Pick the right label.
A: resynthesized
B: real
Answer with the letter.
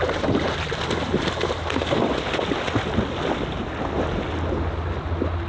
B